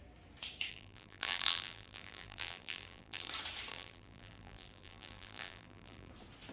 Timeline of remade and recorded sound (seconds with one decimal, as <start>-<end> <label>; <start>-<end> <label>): 0.0-0.7 recorded; 0.7-3.3 remade; 3.3-3.7 recorded; 3.7-6.1 remade; 6.1-6.5 recorded